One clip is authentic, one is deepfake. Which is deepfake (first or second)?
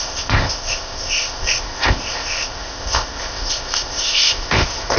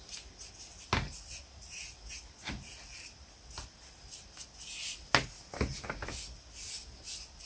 first